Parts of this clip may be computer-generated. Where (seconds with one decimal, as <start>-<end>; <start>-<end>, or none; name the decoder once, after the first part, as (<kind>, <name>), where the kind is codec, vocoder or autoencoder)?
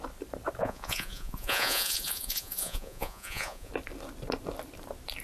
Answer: 0.6-3.7 (vocoder, Vocos)